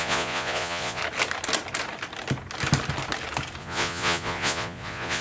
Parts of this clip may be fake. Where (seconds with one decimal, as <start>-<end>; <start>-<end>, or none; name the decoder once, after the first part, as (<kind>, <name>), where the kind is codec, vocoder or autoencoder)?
0.0-1.0 (vocoder, Vocos); 3.6-5.2